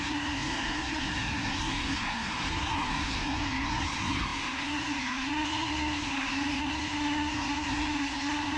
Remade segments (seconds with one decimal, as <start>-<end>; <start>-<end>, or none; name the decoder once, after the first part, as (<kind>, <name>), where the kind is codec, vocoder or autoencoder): 0.0-8.6 (codec, SNAC)